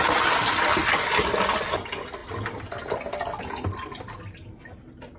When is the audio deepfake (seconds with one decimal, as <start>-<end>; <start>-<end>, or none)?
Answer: none

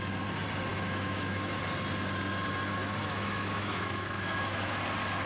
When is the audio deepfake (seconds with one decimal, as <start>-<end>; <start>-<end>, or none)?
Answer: 0.7-1.6; 3.0-4.8